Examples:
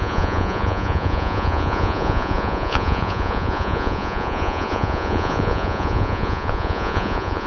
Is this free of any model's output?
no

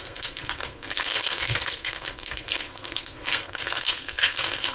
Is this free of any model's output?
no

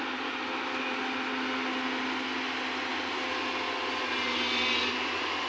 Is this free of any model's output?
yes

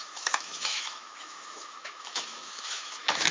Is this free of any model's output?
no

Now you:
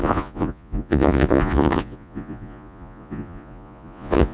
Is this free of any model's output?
no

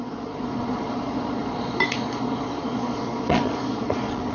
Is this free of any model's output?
no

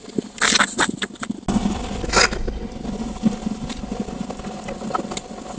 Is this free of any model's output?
yes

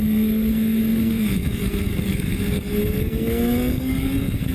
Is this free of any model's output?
no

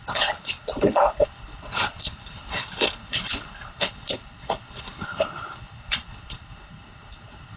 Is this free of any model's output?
no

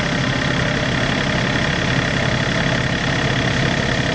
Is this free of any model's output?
yes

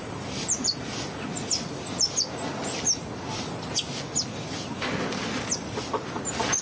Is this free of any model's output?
yes